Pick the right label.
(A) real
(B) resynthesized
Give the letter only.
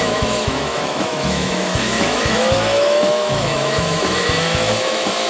B